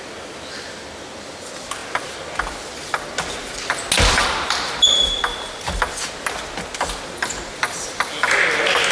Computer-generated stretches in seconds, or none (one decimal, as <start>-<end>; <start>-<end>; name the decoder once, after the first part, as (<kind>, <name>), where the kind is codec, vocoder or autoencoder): 4.2-5.2 (vocoder, BigVGAN v2)